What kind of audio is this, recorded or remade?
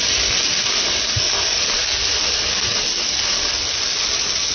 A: recorded